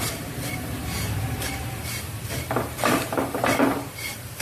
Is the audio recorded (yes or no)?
no